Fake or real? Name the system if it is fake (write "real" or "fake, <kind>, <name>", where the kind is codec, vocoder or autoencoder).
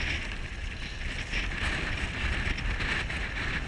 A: real